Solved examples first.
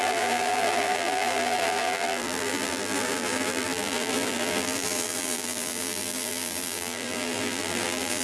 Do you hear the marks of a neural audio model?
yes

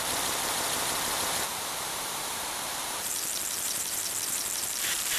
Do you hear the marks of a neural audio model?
yes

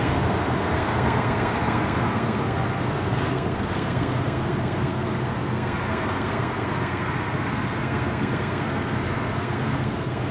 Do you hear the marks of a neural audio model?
yes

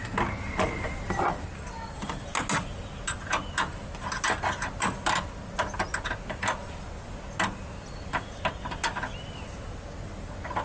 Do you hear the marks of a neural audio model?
no